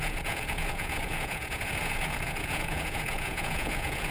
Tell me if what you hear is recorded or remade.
remade